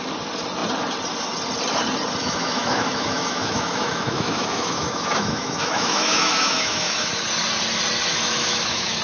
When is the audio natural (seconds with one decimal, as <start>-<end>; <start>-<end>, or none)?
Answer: 0.0-2.2; 7.1-8.1